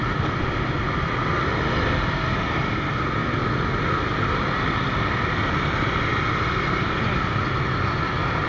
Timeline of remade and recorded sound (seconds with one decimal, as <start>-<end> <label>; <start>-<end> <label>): 0.0-8.5 recorded